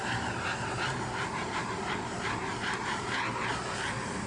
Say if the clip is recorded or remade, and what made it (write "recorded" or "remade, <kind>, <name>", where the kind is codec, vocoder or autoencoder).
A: remade, vocoder, BigVGAN v2